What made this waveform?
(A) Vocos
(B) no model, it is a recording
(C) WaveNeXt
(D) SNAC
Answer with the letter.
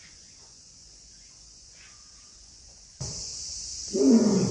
A